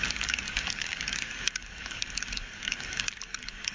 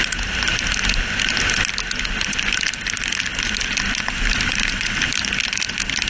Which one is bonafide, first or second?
second